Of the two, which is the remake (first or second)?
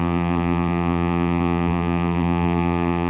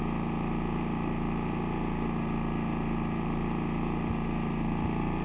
first